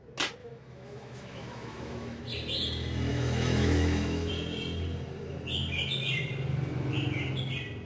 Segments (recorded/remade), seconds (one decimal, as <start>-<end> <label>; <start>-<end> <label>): 0.0-0.4 recorded; 0.4-2.2 remade; 2.2-3.1 recorded; 3.1-4.3 remade; 4.3-7.9 recorded

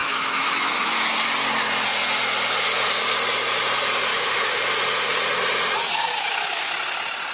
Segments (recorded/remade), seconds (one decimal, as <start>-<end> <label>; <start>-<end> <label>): 0.0-0.7 remade; 0.7-4.1 recorded; 4.1-4.6 remade; 4.6-6.1 recorded; 6.1-6.7 remade; 6.7-7.3 recorded

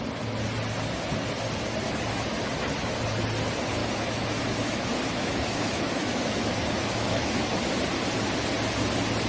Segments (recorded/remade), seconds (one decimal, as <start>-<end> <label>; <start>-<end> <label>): 0.0-3.8 recorded; 3.8-7.8 remade; 7.8-9.3 recorded

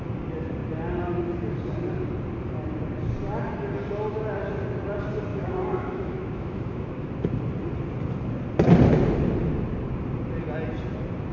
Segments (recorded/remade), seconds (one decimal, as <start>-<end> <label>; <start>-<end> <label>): 0.0-5.3 recorded; 5.3-7.1 remade; 7.1-11.3 recorded